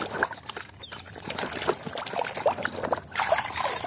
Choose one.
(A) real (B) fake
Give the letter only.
A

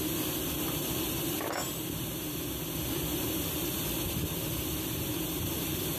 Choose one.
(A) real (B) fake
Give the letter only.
A